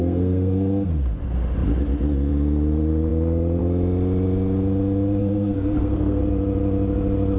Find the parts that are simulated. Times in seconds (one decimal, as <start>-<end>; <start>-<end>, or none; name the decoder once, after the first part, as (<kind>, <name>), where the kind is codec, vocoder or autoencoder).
0.0-0.9 (codec, SNAC); 5.2-6.2

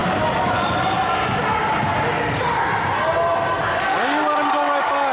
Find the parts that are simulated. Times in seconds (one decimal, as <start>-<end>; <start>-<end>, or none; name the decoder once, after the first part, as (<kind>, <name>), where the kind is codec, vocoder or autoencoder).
none

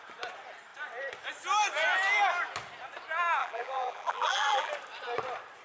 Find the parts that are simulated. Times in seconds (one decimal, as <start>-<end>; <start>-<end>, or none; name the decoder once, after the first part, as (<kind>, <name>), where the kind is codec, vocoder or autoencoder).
3.4-4.7 (vocoder, BigVGAN v2)

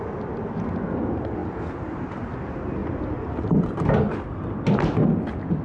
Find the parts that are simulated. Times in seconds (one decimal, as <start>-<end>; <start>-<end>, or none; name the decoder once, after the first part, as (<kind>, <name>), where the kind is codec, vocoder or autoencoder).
none

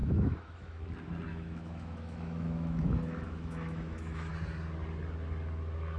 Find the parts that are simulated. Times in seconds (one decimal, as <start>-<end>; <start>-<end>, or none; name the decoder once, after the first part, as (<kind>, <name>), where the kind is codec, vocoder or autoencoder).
0.0-0.8 (autoencoder, DAC-VAE); 1.3-4.3

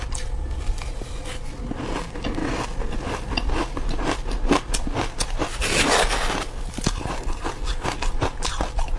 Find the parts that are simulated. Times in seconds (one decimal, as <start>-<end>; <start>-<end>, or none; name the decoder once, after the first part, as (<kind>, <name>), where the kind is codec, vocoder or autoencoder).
none